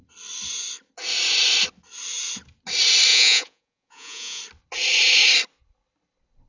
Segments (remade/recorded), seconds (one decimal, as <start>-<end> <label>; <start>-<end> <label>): 0.0-3.1 recorded; 3.1-4.4 remade; 4.4-6.5 recorded